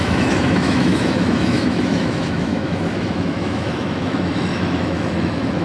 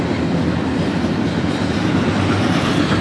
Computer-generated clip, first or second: first